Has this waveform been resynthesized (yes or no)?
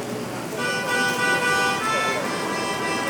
no